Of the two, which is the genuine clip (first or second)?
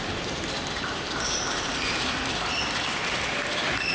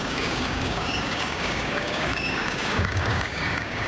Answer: first